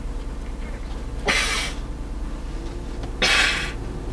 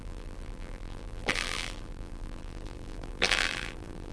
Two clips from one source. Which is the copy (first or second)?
second